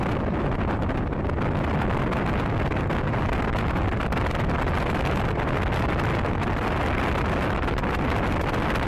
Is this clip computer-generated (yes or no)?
no